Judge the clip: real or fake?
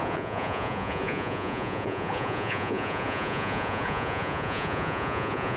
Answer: fake